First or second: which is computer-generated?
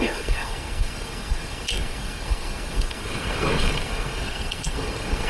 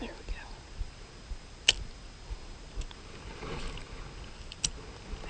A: first